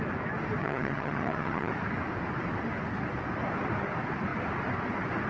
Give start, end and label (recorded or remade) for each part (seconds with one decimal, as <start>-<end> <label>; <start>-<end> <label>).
0.0-0.6 recorded; 0.6-1.7 remade; 1.7-5.3 recorded